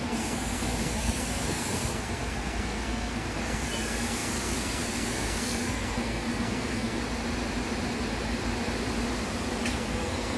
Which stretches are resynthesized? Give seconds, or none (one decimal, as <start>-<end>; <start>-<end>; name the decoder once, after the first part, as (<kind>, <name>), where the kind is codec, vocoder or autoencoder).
0.0-7.0 (codec, SNAC); 9.7-10.4